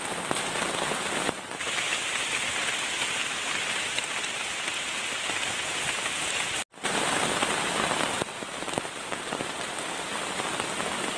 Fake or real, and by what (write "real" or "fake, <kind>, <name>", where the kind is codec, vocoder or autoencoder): real